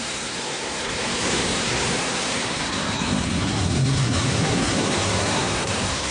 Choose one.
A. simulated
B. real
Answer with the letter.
A